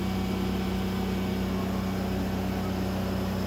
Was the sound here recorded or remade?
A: recorded